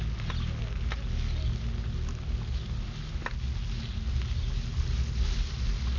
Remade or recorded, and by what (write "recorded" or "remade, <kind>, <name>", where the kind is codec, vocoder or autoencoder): recorded